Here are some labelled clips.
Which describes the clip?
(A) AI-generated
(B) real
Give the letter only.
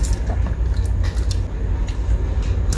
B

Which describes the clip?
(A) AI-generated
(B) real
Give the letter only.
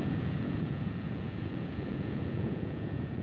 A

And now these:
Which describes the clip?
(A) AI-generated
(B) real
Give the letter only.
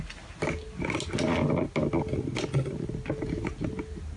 B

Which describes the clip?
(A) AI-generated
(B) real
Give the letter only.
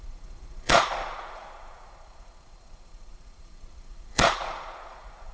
A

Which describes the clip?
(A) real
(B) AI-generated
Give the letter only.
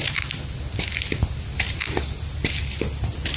A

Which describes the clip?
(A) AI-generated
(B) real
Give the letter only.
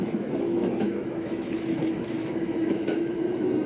A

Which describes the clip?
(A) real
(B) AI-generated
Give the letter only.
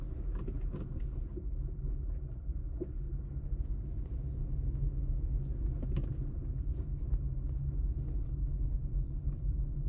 A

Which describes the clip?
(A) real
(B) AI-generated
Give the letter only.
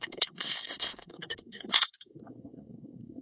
B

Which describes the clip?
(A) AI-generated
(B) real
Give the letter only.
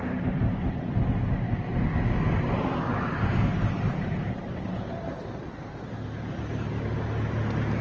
B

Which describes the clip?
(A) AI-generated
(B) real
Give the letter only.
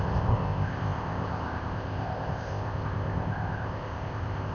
A